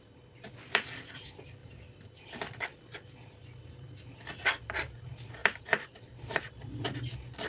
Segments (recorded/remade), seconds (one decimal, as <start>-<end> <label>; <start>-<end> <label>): 0.0-1.6 recorded; 1.6-2.4 remade; 2.4-5.4 recorded; 5.4-6.5 remade; 6.5-7.5 recorded